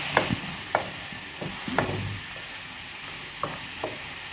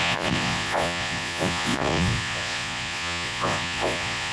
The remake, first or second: second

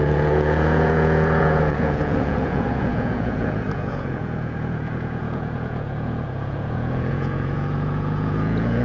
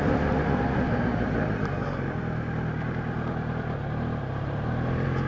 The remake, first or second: first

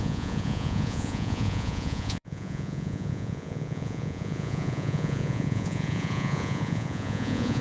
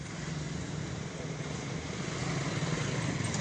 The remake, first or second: first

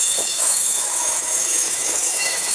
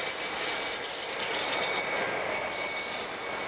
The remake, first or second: first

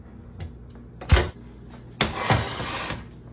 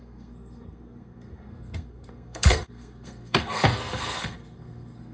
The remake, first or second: second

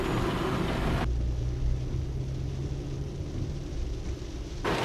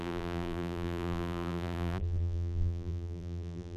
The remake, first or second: second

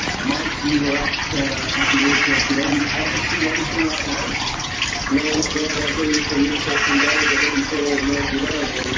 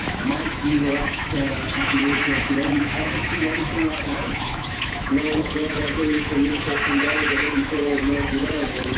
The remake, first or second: second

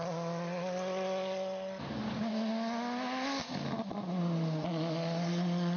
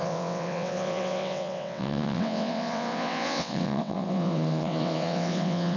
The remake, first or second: second